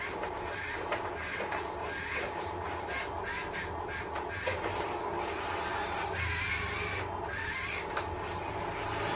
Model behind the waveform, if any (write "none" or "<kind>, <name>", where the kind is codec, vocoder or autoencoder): none